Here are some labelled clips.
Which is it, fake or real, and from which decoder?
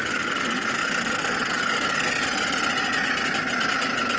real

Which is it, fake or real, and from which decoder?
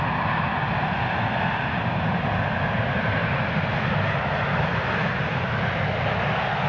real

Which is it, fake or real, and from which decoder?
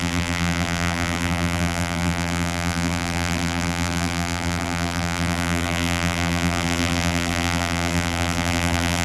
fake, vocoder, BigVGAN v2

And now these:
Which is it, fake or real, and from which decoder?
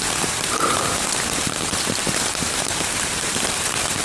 fake, vocoder, BigVGAN v2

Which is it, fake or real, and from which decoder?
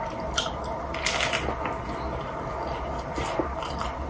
real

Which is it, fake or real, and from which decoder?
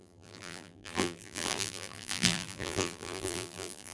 fake, vocoder, BigVGAN v2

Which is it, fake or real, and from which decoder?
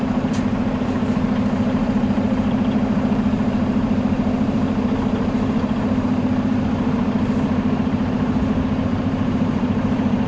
fake, vocoder, BigVGAN v2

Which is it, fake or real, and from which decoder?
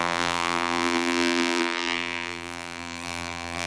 fake, vocoder, BigVGAN v2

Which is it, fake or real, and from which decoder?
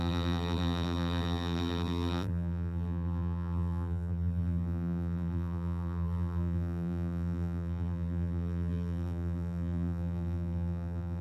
fake, vocoder, BigVGAN v2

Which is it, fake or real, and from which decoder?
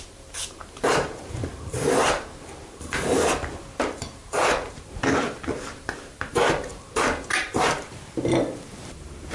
fake, vocoder, BigVGAN v2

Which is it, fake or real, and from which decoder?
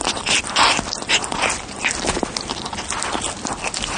real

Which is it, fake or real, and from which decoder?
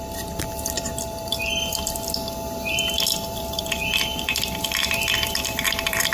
fake, vocoder, BigVGAN v2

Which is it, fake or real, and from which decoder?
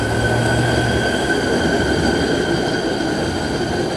real